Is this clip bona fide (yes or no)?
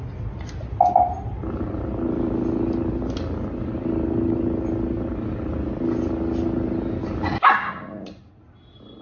yes